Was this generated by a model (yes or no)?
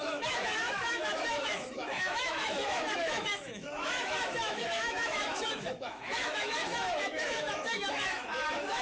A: yes